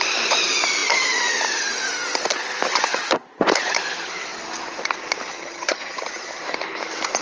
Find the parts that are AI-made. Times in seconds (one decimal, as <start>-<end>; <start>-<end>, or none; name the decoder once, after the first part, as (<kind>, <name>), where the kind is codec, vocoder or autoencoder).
5.3-6.4 (vocoder, HiFi-GAN)